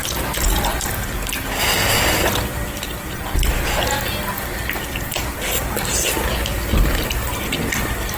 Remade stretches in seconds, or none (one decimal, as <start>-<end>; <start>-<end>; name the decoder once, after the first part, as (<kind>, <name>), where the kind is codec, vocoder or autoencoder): 4.9-7.2 (vocoder, BigVGAN v2)

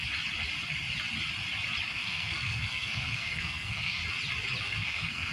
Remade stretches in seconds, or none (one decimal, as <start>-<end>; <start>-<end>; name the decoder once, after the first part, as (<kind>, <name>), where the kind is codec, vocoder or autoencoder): 1.9-4.0 (codec, SNAC); 4.6-5.3

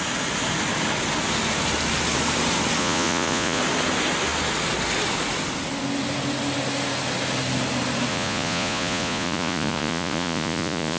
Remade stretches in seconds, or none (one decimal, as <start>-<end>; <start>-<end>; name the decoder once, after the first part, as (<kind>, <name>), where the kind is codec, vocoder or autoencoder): 2.8-3.6 (vocoder, Vocos); 8.1-11.0

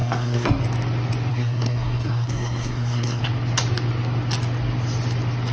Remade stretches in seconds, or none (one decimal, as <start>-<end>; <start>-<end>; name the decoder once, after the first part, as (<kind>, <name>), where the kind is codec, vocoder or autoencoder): 0.0-0.6 (codec, SNAC); 1.3-3.2

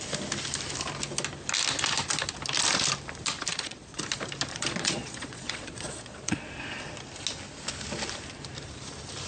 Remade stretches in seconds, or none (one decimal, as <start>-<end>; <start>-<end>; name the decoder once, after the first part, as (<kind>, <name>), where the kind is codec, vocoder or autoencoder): 3.5-4.0 (vocoder, Vocos); 4.5-6.5